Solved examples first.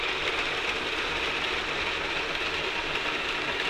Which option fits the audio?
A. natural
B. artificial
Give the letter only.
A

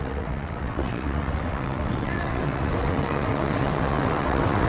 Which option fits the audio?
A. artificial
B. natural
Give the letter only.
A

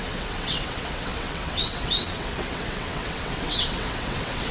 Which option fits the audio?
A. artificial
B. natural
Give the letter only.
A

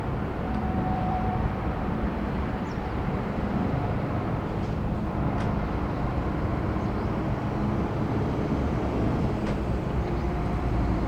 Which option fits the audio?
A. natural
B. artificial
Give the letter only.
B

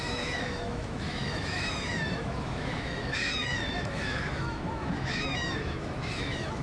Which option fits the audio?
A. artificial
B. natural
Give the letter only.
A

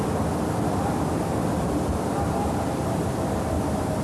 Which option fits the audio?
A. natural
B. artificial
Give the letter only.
A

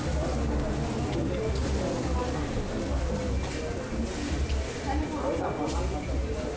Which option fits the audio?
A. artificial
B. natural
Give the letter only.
B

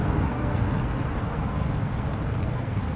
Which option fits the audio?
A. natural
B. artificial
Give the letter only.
B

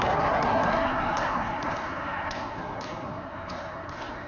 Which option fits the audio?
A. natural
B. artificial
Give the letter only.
B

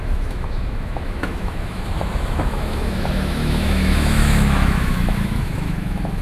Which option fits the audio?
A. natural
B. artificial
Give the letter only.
B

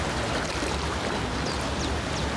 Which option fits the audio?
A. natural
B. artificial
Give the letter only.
A